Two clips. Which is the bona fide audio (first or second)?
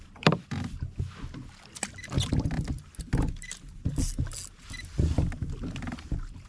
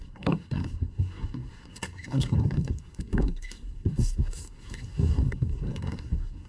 first